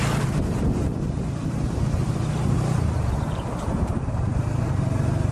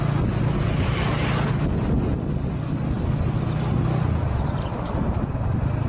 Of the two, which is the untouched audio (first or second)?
second